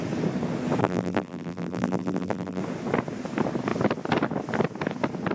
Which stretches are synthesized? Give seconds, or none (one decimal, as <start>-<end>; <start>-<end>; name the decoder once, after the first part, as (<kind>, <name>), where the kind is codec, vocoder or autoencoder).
0.8-2.6 (vocoder, BigVGAN v2)